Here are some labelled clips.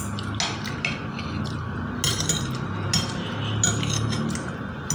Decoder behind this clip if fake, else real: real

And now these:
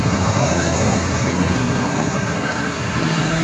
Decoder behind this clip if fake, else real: fake, codec, SNAC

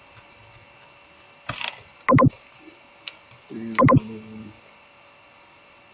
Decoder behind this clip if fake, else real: real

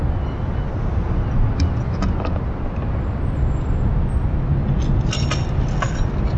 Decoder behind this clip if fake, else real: real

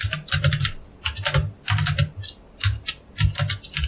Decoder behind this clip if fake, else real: real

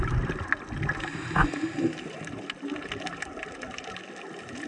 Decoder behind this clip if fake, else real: real